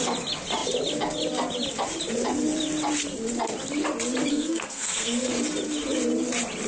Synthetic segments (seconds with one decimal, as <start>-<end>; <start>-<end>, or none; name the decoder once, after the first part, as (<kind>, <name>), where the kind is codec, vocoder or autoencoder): 4.3-5.3 (codec, SNAC)